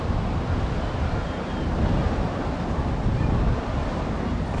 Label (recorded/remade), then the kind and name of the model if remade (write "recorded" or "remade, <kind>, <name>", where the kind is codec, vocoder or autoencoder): recorded